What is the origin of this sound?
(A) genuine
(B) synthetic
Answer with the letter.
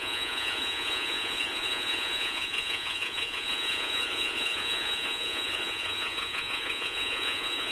B